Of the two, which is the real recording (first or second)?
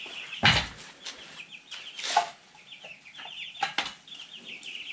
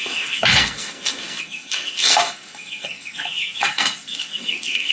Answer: first